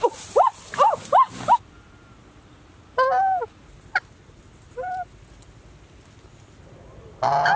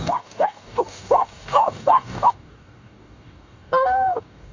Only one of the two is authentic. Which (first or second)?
first